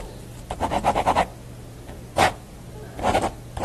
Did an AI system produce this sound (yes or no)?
no